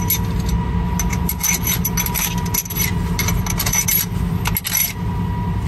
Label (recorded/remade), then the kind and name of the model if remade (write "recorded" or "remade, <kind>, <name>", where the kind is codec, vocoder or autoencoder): recorded